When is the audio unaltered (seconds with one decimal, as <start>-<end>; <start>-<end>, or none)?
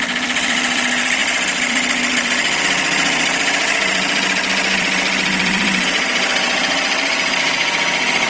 none